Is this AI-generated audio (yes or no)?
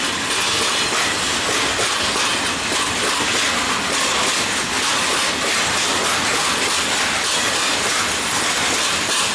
no